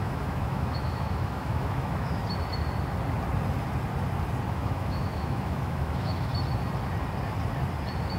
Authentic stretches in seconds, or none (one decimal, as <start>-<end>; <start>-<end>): 2.2-4.5; 6.3-8.2